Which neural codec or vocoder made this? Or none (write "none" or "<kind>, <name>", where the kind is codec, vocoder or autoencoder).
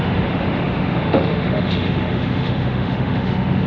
autoencoder, DAC-VAE